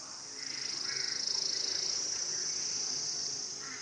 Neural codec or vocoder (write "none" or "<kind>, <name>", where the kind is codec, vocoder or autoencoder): none